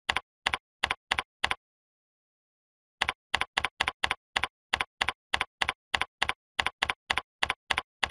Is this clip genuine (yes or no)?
yes